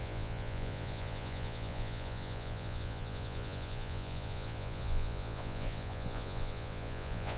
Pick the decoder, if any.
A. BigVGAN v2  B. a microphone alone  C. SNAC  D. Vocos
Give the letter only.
D